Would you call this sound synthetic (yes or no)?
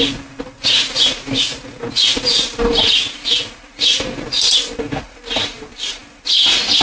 no